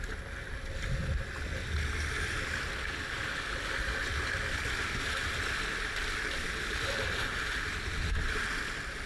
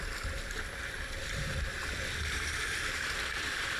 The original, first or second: first